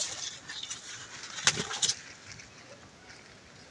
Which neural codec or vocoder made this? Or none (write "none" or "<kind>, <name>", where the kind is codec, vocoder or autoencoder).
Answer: none